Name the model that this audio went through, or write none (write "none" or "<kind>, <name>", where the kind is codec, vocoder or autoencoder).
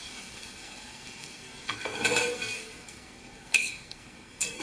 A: codec, SNAC